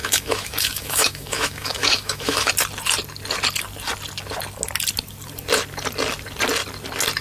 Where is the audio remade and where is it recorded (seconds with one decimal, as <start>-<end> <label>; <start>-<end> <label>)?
0.0-2.5 remade; 2.5-7.2 recorded

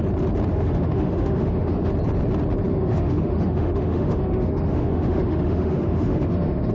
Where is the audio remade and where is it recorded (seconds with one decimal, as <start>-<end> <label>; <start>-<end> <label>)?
0.0-0.5 recorded; 0.5-1.9 remade; 1.9-2.7 recorded; 2.7-6.7 remade

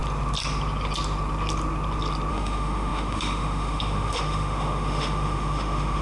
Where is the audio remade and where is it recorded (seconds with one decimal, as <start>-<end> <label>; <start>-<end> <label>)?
0.0-2.3 recorded; 2.3-6.0 remade